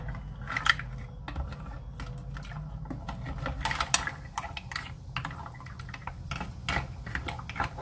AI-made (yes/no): no